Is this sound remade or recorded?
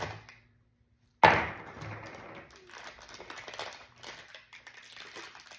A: recorded